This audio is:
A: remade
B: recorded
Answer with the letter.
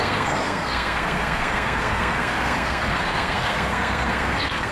A